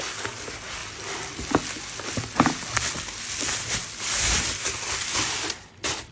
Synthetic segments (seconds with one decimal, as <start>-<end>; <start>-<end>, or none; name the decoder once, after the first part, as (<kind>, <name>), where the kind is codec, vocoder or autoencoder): none